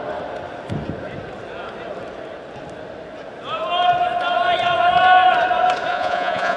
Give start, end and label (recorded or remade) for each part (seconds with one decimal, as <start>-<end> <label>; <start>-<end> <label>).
0.0-5.9 recorded; 5.9-6.6 remade